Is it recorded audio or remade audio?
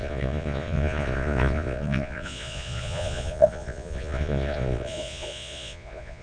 remade